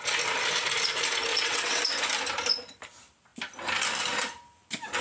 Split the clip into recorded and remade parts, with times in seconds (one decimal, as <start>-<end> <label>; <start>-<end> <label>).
0.0-1.3 recorded; 1.3-1.8 remade; 1.8-5.0 recorded